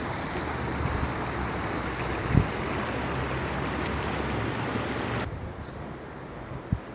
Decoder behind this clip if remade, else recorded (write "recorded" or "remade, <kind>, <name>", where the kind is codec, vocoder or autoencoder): recorded